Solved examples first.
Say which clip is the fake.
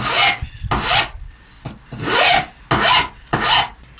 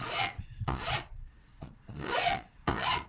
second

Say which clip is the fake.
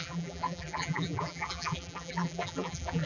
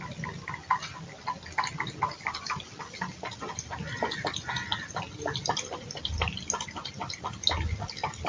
first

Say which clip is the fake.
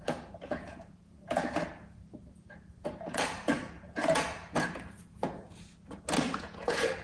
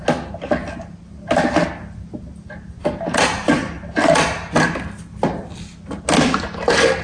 first